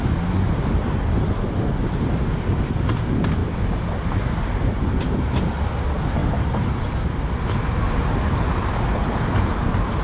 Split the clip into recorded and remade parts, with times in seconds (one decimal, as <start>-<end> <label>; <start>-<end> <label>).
0.0-10.0 recorded